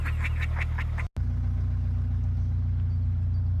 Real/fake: real